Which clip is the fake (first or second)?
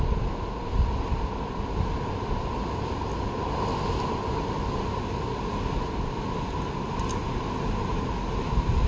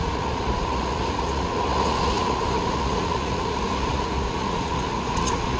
second